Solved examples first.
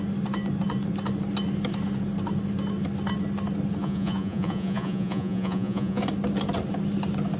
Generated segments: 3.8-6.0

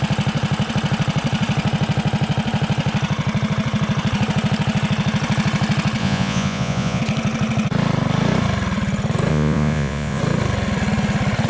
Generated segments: 6.0-7.0; 9.3-10.2

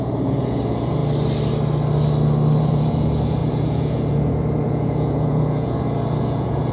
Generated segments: 0.0-1.0; 2.6-6.7